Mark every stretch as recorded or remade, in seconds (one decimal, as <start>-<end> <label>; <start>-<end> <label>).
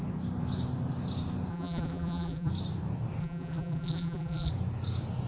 0.0-1.5 recorded; 1.5-2.5 remade; 2.5-3.2 recorded; 3.2-4.5 remade; 4.5-5.3 recorded